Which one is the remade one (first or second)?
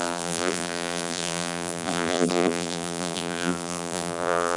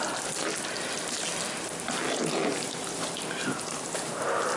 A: first